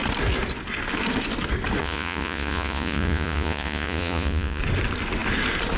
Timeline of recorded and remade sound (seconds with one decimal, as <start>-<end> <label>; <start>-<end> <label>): 0.0-1.8 recorded; 1.8-4.6 remade; 4.6-5.8 recorded